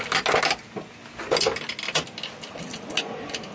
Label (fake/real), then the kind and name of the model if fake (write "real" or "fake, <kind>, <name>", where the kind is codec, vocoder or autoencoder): real